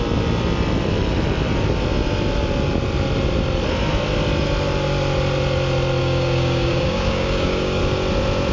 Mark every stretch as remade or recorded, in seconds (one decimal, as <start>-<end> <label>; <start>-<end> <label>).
0.0-6.0 recorded; 6.0-7.8 remade; 7.8-8.5 recorded